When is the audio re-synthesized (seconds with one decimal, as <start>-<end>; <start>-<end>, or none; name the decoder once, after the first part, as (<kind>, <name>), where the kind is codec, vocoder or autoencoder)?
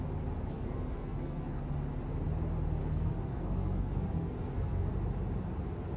0.5-1.6 (codec, SNAC); 2.8-4.9